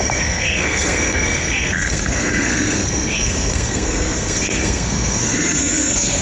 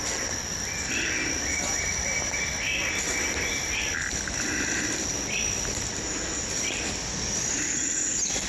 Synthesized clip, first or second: first